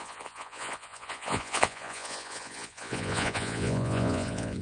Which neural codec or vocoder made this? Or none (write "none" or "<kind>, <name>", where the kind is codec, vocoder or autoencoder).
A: vocoder, Vocos